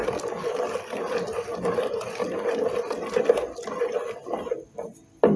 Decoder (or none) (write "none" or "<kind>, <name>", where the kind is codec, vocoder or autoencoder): none